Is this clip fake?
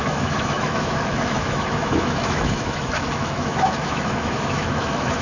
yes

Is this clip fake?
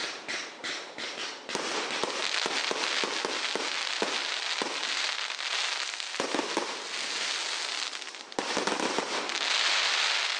no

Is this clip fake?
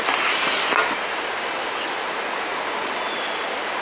no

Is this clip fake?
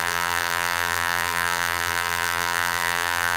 yes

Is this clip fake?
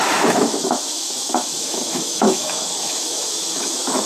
yes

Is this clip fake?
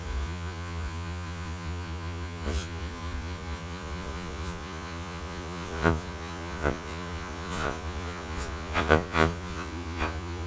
yes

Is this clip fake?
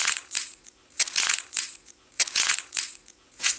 yes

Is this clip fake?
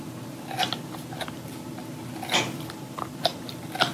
no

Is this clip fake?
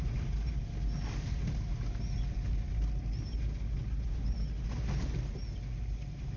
no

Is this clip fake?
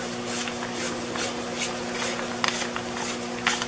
no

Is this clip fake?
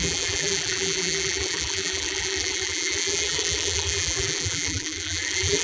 yes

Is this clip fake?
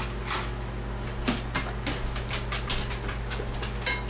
no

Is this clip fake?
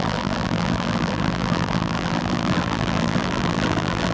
yes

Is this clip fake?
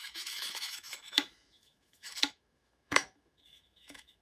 yes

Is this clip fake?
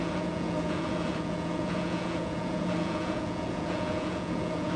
yes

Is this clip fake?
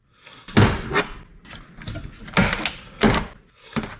no